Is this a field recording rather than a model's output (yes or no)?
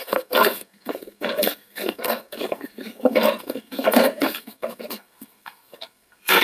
no